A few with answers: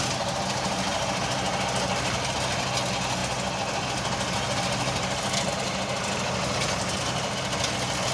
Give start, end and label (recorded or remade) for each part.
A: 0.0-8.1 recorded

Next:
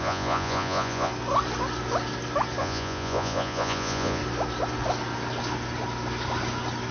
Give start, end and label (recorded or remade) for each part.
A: 0.0-1.1 remade; 1.1-2.6 recorded; 2.6-4.2 remade; 4.2-6.9 recorded

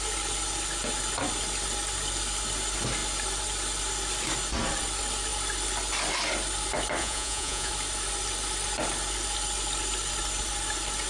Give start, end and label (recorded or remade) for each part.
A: 0.0-7.0 recorded; 7.0-7.7 remade; 7.7-11.1 recorded

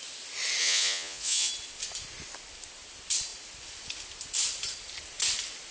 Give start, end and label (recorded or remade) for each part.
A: 0.0-0.6 recorded; 0.6-1.5 remade; 1.5-5.7 recorded

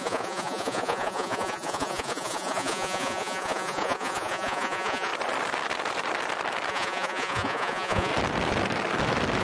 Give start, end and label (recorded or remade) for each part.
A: 0.0-5.1 remade; 5.1-6.7 recorded; 6.7-8.1 remade; 8.1-9.4 recorded

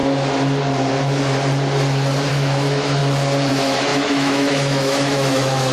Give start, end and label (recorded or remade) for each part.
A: 0.0-2.3 recorded; 2.3-3.0 remade; 3.0-3.5 recorded; 3.5-5.7 remade

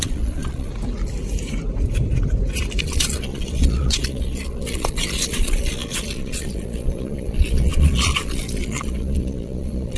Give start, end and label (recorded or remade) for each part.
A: 0.0-0.7 remade; 0.7-2.8 recorded; 2.8-10.0 remade

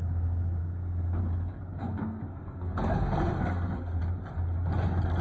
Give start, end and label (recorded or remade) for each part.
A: 0.0-0.6 recorded; 0.6-1.2 remade; 1.2-1.8 recorded; 1.8-4.0 remade; 4.0-5.2 recorded